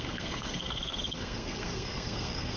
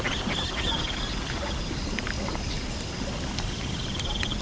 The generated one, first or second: first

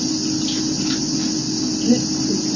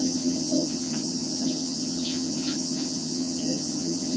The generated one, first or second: second